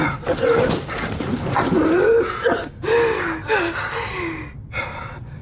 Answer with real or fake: real